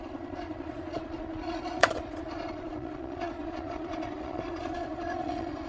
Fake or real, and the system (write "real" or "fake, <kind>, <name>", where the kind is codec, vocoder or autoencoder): fake, vocoder, Vocos